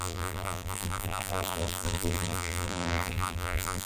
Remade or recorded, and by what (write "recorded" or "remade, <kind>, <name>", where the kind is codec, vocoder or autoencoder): remade, vocoder, BigVGAN v2